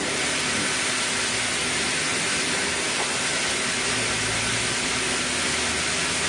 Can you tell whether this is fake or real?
real